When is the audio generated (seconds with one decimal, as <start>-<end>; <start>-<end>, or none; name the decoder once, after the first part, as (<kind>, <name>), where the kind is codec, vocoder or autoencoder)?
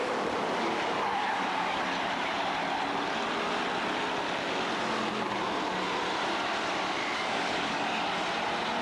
0.0-1.8 (codec, DAC); 7.0-8.0